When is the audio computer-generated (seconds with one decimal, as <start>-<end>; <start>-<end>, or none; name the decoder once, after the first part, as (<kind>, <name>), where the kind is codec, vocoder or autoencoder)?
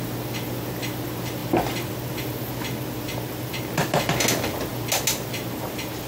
none